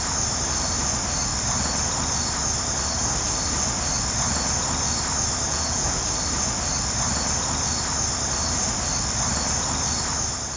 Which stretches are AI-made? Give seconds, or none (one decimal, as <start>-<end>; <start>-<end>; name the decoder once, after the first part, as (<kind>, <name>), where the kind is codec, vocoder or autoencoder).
5.5-6.0 (vocoder, Vocos)